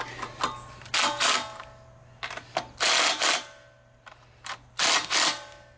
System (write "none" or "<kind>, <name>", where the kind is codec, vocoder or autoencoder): none